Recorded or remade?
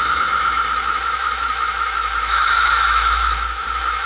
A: remade